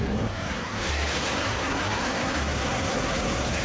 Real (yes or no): no